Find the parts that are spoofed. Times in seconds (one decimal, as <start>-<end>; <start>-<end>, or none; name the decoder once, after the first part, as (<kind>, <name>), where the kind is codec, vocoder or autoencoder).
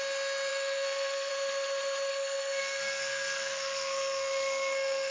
0.5-1.3 (codec, SNAC); 2.1-5.1